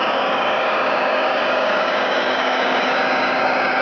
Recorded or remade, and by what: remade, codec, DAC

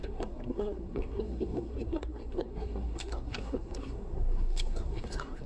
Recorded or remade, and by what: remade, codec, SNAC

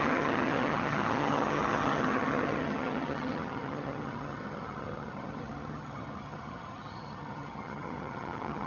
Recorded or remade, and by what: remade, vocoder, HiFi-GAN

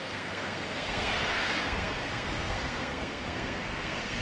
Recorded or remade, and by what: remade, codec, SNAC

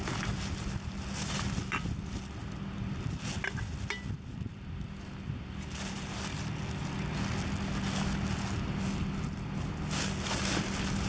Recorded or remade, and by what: recorded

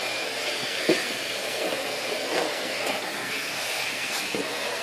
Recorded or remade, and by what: remade, codec, SNAC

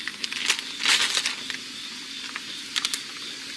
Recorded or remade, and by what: recorded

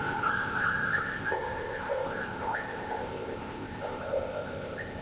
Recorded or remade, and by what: remade, codec, ZipCodec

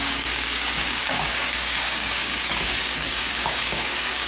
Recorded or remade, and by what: remade, codec, DAC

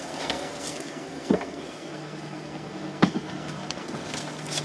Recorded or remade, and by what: remade, codec, SNAC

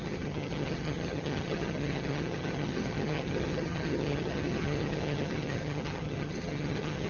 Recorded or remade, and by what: remade, vocoder, HiFi-GAN